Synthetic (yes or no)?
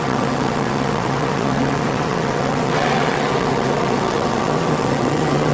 yes